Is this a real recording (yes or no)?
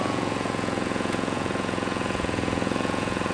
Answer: no